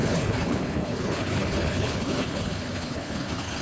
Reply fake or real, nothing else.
fake